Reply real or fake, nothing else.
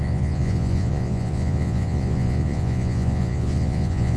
fake